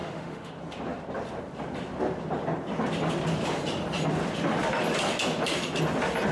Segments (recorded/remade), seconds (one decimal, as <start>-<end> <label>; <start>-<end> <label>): 0.0-0.5 remade; 0.5-6.3 recorded

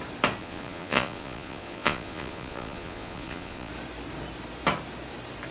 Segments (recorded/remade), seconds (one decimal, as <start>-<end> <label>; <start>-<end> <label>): 0.0-0.4 recorded; 0.4-3.7 remade; 3.7-5.5 recorded

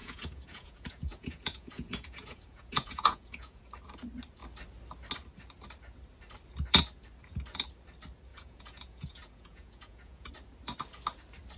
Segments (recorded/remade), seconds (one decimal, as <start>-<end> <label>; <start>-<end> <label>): 0.0-3.6 remade; 3.6-8.3 recorded; 8.3-10.3 remade; 10.3-11.6 recorded

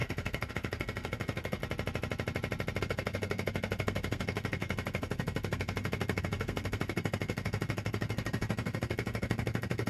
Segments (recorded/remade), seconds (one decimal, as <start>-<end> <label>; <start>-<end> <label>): 0.0-1.6 remade; 1.6-2.8 recorded; 2.8-9.9 remade

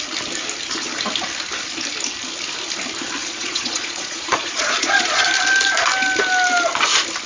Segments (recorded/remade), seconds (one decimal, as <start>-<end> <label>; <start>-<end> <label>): 0.0-3.2 recorded; 3.2-5.2 remade; 5.2-7.3 recorded